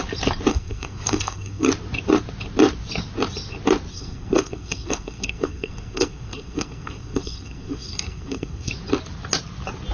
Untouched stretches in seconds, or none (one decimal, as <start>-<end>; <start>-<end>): 0.0-0.5; 1.7-3.9; 8.7-9.9